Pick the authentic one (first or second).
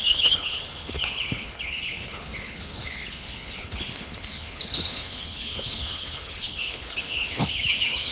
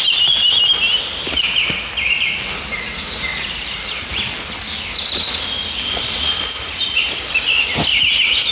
second